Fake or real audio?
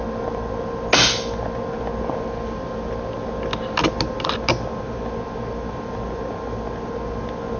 real